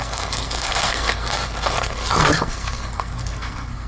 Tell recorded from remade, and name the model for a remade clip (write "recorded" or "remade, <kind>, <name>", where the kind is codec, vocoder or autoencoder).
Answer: remade, codec, SNAC